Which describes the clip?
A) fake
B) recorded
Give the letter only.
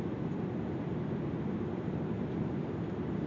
B